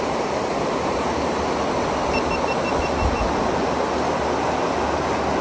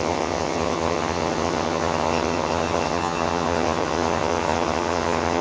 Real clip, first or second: first